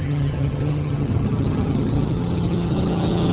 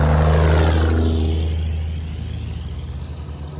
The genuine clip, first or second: second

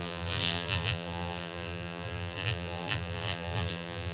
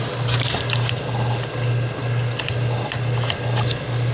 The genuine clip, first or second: second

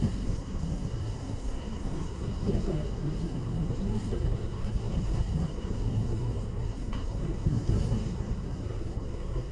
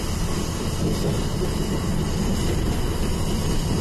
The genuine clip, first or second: second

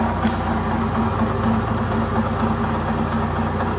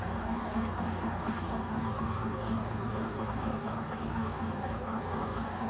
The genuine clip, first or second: first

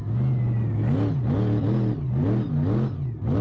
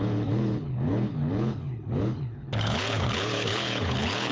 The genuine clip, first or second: first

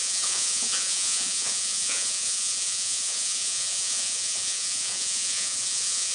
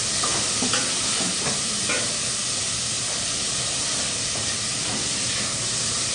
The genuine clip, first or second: second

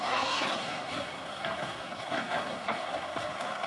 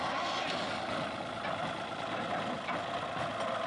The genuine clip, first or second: second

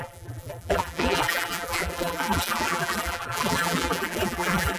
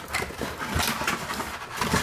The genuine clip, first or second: second